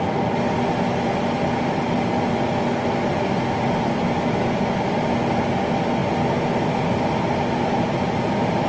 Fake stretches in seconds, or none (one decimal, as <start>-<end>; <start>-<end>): none